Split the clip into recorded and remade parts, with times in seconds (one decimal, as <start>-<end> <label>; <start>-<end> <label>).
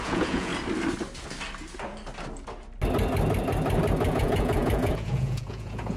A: 0.0-0.5 remade; 0.5-4.1 recorded; 4.1-6.0 remade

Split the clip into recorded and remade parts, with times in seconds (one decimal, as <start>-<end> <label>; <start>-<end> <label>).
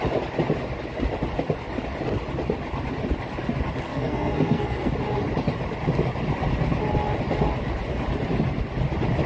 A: 0.0-3.9 recorded; 3.9-4.9 remade; 4.9-9.3 recorded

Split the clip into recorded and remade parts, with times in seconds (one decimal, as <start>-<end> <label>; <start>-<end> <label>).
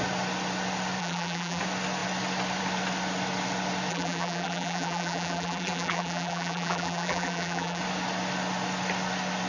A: 0.0-1.0 recorded; 1.0-1.6 remade; 1.6-3.9 recorded; 3.9-7.8 remade; 7.8-9.5 recorded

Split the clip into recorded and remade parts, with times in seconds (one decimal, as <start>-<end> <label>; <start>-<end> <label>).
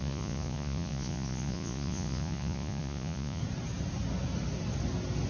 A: 0.0-3.4 remade; 3.4-5.3 recorded